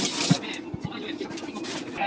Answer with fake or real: real